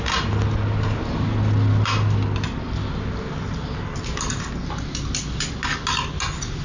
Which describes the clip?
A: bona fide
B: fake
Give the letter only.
A